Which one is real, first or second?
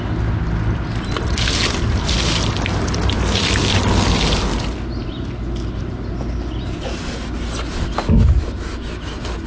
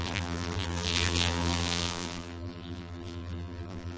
first